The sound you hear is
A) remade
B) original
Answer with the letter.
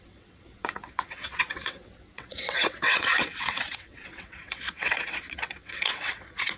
A